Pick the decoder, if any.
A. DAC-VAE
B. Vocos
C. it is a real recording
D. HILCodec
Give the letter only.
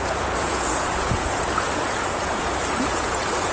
B